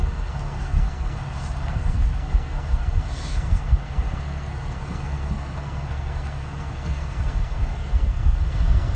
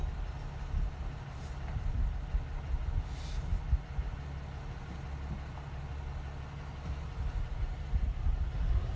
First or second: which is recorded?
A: second